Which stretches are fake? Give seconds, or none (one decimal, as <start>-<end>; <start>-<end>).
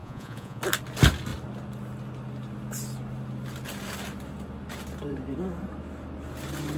0.0-0.6